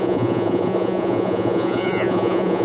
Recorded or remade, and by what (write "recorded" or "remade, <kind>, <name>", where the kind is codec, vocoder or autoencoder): remade, vocoder, Vocos